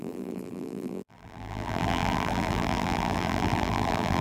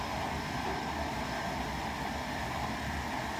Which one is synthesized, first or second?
first